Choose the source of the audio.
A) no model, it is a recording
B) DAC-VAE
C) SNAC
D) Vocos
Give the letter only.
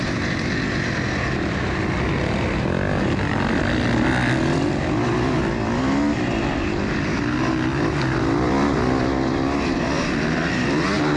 A